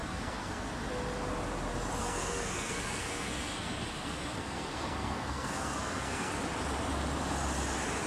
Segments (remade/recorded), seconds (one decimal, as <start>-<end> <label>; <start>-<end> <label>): 0.0-0.7 remade; 0.7-2.0 recorded; 2.0-6.3 remade; 6.3-8.1 recorded